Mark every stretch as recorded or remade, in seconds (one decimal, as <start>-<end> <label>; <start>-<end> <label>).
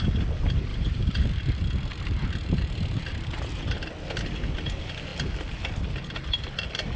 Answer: 0.0-0.7 recorded; 0.7-1.2 remade; 1.2-1.9 recorded; 1.9-3.9 remade; 3.9-7.0 recorded